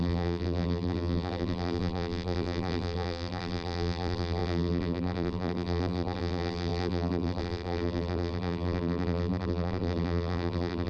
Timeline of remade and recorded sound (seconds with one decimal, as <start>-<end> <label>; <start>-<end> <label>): 0.0-10.9 remade